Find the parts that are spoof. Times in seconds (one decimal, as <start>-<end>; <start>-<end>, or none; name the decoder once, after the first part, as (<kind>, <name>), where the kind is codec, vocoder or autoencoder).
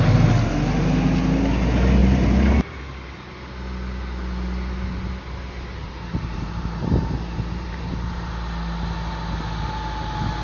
2.0-2.8 (vocoder, BigVGAN v2); 5.8-8.3